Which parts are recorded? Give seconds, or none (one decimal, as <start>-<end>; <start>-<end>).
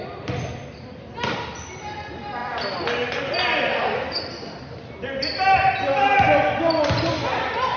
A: 0.0-7.8